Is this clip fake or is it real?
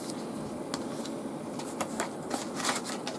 real